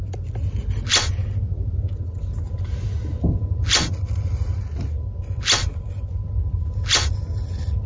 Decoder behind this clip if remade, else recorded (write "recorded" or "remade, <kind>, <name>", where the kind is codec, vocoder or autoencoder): recorded